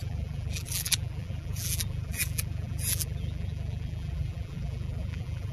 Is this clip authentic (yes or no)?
no